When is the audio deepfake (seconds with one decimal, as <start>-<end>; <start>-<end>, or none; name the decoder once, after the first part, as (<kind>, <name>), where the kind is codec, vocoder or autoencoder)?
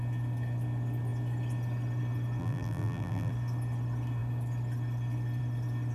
2.4-3.3 (vocoder, BigVGAN v2)